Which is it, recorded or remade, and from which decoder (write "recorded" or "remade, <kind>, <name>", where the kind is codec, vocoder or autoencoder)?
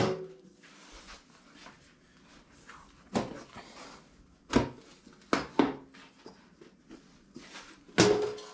recorded